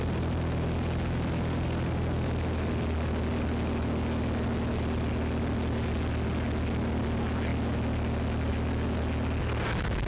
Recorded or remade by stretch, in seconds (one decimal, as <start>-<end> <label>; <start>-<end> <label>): 0.0-10.1 recorded